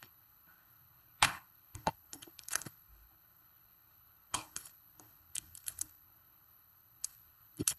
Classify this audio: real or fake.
fake